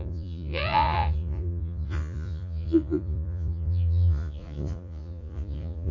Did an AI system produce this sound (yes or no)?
yes